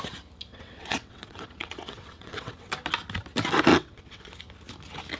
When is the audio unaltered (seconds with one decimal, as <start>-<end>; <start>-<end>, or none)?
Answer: 0.0-0.5; 2.7-3.7; 4.3-5.2